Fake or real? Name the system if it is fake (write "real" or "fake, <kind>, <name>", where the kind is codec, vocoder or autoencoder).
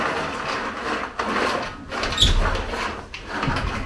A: real